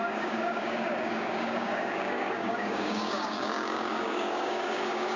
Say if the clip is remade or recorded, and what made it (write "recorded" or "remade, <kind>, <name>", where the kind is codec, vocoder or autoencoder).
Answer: remade, codec, DAC